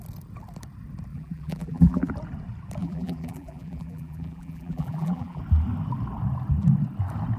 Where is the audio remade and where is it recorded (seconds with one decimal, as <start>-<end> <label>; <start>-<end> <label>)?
0.0-1.1 recorded; 1.1-2.1 remade; 2.1-2.8 recorded; 2.8-5.4 remade; 5.4-7.4 recorded